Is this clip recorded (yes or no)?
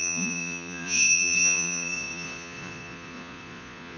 no